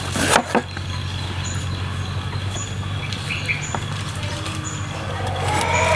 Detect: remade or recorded recorded